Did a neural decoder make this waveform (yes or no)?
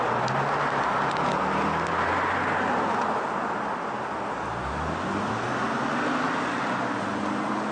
no